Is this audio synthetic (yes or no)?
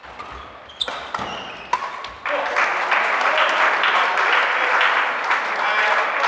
no